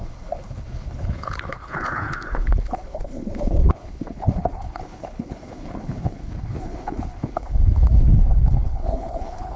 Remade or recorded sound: remade